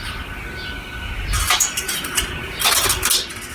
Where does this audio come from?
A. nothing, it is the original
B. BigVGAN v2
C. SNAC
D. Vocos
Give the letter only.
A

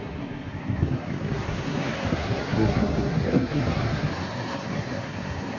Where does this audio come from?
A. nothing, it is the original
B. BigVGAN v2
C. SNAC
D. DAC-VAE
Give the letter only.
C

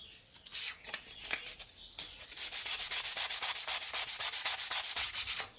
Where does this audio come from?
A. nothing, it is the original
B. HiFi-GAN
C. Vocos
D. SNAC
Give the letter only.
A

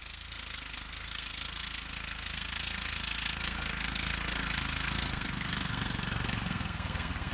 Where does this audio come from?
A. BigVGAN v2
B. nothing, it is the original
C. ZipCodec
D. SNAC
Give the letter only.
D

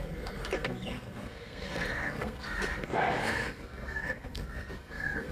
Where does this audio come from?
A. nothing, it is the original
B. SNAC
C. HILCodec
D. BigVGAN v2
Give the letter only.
B